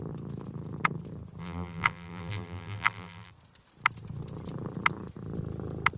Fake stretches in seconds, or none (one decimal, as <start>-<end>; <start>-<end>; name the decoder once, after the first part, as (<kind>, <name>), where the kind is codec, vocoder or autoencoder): 1.4-3.3 (vocoder, BigVGAN v2)